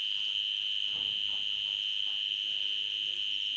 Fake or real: real